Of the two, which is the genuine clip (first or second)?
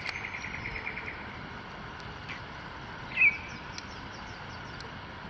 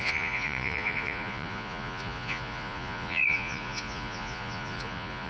first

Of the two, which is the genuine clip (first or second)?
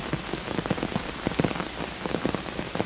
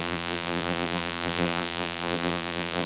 first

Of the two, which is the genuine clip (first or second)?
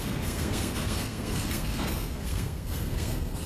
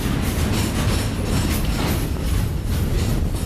second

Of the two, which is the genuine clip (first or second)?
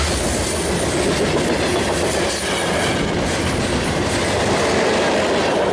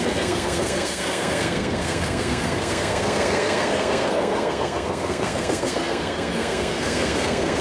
first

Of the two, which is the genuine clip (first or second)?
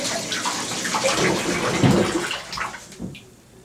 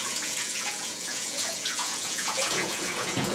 first